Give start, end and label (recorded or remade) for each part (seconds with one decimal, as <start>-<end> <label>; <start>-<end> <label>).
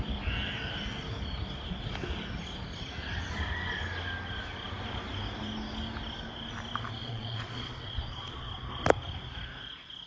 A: 0.0-7.0 recorded; 7.0-8.5 remade; 8.5-10.1 recorded